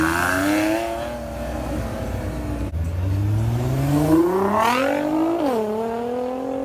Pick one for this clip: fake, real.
real